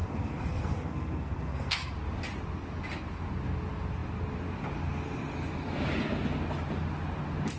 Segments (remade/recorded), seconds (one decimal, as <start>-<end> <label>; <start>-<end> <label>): 0.0-1.9 remade; 1.9-7.6 recorded